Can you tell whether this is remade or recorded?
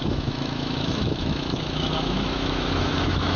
remade